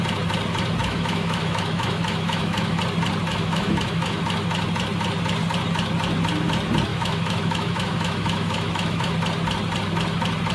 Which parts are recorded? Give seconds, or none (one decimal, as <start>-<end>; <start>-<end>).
0.0-0.8; 2.8-3.3; 4.2-6.9; 9.1-10.5